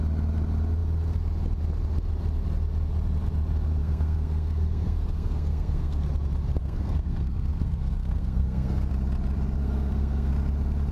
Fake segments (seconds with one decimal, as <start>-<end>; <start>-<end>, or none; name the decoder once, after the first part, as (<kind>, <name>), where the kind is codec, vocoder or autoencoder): 3.8-6.0 (codec, SNAC); 6.6-8.9; 9.6-10.3